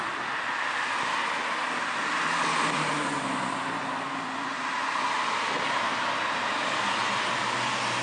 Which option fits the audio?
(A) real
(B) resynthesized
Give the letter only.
A